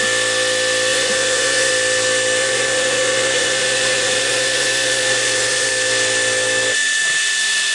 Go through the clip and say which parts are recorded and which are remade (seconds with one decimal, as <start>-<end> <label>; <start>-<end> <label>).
0.0-0.9 recorded; 0.9-1.7 remade; 1.7-2.4 recorded; 2.4-5.7 remade; 5.7-7.7 recorded